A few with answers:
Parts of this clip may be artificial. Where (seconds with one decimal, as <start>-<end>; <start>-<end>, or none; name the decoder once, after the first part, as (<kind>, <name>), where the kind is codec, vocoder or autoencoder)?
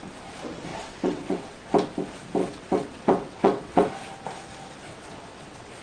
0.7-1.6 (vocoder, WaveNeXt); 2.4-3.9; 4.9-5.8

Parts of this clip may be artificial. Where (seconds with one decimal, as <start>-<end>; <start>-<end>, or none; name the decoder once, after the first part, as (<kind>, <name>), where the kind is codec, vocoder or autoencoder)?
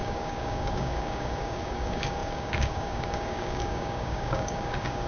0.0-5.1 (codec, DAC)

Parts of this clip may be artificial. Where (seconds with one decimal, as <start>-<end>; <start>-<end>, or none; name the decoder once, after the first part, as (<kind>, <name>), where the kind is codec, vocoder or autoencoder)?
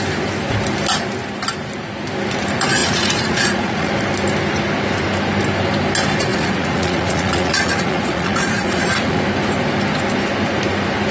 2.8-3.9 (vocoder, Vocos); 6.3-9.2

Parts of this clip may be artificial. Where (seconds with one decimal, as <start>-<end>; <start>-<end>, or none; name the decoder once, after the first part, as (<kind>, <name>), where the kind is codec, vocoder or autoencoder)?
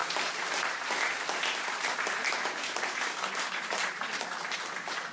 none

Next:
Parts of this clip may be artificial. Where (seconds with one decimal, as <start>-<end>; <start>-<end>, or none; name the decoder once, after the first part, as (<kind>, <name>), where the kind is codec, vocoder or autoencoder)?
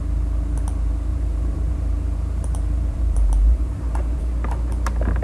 1.1-4.2 (vocoder, BigVGAN v2)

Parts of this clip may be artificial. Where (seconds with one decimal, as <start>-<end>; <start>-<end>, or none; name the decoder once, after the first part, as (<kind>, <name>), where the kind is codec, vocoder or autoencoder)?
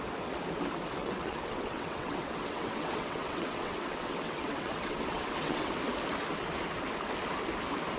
1.0-5.7 (vocoder, WaveNeXt)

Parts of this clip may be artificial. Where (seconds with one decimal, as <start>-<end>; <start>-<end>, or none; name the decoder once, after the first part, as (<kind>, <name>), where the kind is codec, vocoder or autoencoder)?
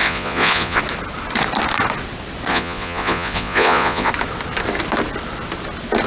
0.0-0.8 (vocoder, Vocos); 2.5-4.1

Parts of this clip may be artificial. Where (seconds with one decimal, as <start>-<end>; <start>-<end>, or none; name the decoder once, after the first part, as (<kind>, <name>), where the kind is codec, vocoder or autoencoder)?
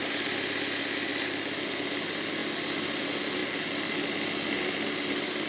none